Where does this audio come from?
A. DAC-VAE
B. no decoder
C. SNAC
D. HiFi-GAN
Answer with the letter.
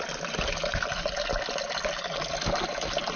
B